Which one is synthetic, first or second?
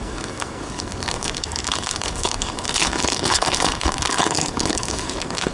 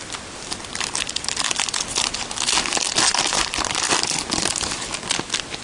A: first